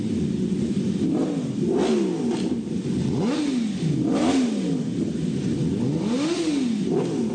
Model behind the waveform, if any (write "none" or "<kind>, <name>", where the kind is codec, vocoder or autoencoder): none